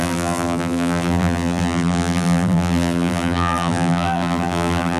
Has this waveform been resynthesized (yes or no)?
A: yes